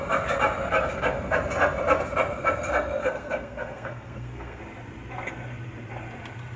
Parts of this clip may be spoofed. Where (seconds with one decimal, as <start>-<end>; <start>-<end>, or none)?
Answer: 3.0-4.6